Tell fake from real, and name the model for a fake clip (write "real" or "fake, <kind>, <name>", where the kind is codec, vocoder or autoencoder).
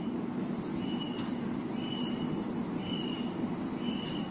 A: real